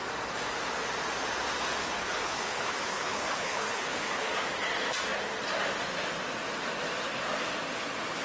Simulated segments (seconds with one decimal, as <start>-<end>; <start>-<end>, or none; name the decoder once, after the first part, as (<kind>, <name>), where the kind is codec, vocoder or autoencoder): 1.8-4.3 (codec, HILCodec)